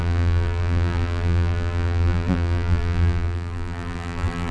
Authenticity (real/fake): fake